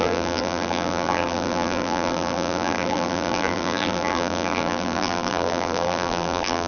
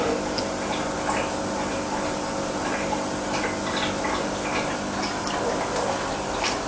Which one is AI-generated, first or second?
first